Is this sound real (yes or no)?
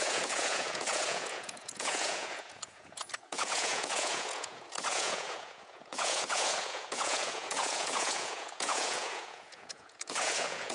no